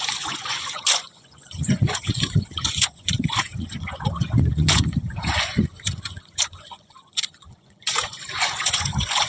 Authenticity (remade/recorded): remade